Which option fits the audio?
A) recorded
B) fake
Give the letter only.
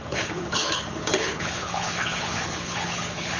B